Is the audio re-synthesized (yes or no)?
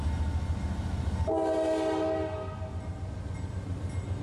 no